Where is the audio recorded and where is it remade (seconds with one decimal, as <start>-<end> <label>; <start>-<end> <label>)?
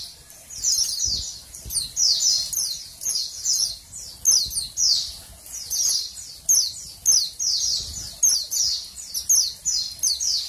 0.0-2.9 recorded; 2.9-3.7 remade; 3.7-10.5 recorded